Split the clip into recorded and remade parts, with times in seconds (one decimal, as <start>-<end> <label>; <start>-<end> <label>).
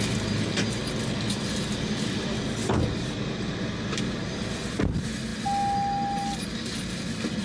0.0-7.4 recorded